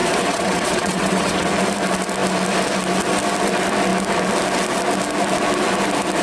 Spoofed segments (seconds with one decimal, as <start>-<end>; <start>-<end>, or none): 0.0-1.5